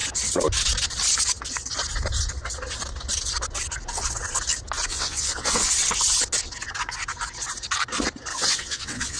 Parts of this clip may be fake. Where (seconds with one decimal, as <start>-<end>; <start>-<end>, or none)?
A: 4.9-5.7; 8.3-9.2